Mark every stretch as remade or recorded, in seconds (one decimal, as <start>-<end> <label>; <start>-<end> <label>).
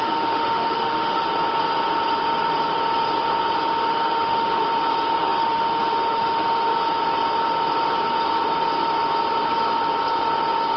0.0-1.2 remade; 1.2-3.9 recorded; 3.9-4.6 remade; 4.6-5.2 recorded; 5.2-6.7 remade; 6.7-10.8 recorded